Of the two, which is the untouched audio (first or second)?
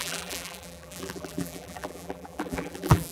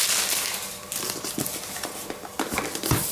second